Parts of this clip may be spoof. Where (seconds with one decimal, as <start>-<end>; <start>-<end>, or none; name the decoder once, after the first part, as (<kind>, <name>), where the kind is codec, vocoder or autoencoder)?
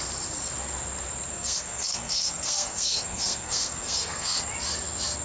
1.3-4.4 (codec, SNAC)